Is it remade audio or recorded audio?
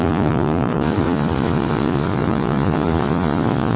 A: remade